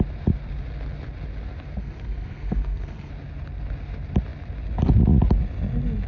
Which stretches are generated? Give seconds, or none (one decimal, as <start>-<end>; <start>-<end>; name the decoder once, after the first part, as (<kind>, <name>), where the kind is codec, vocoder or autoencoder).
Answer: 1.8-3.1 (codec, SNAC)